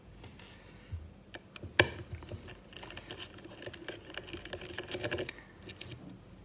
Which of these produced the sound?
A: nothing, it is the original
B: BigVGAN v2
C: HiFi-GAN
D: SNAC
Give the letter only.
A